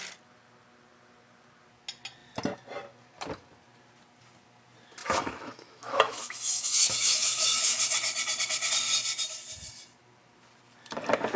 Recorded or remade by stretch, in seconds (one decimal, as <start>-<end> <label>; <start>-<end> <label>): 0.0-5.0 recorded; 5.0-7.8 remade; 7.8-11.4 recorded